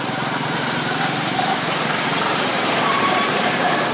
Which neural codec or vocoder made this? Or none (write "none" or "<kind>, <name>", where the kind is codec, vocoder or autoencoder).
vocoder, BigVGAN v2